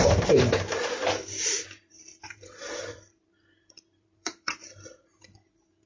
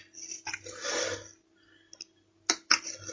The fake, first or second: first